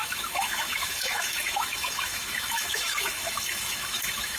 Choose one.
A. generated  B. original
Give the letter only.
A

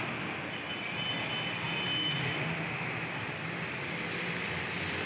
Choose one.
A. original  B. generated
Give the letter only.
A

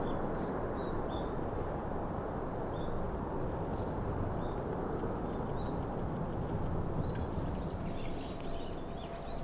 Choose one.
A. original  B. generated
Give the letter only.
A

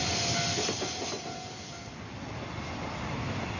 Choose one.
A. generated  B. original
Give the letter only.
B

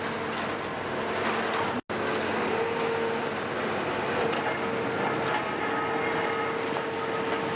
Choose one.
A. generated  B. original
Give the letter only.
B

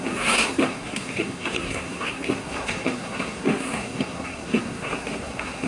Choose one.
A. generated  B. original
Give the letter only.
A